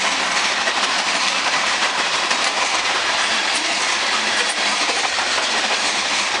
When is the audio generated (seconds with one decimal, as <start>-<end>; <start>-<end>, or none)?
0.7-4.5